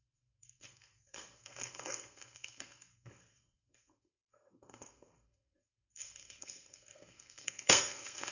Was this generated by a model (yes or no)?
yes